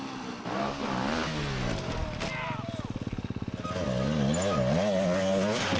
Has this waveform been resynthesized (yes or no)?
no